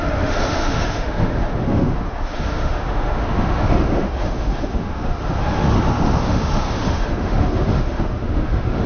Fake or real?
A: fake